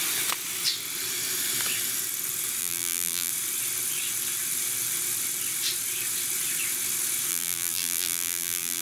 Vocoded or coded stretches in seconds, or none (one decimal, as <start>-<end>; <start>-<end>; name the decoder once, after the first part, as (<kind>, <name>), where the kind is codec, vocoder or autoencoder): 2.6-3.3 (vocoder, BigVGAN v2); 7.3-8.8